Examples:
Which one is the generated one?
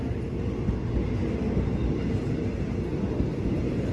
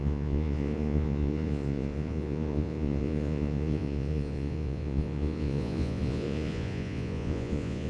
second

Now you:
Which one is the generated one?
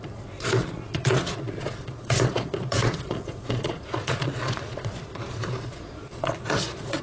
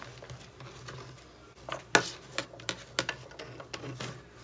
first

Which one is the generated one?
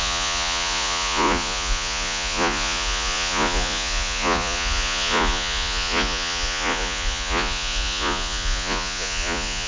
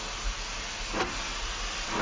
first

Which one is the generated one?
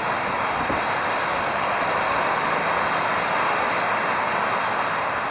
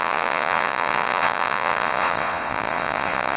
second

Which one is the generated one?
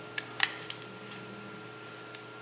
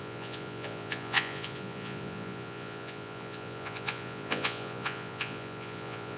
second